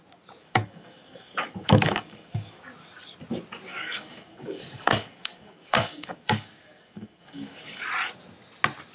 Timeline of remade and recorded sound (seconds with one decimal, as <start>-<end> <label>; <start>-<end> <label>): 0.0-0.4 recorded; 0.4-2.6 remade; 2.6-3.7 recorded; 3.7-7.8 remade; 7.8-8.9 recorded

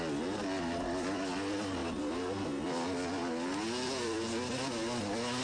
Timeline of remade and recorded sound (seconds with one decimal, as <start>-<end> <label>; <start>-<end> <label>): 0.0-5.4 recorded

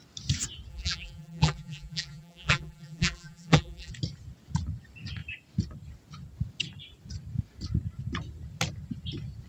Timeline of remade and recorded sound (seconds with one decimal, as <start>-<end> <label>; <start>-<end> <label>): 0.0-0.7 recorded; 0.7-3.9 remade; 3.9-9.5 recorded

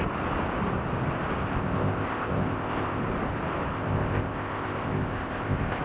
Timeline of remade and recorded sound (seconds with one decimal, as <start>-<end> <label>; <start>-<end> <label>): 0.0-1.4 recorded; 1.4-3.0 remade; 3.0-3.7 recorded; 3.7-5.8 remade